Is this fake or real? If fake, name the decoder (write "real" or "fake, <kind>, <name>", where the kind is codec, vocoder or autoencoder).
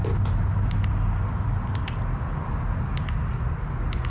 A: real